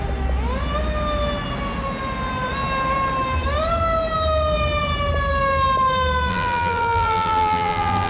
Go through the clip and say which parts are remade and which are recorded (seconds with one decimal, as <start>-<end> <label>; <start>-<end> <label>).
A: 0.0-6.3 recorded; 6.3-8.1 remade